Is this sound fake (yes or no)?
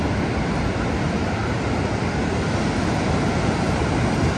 no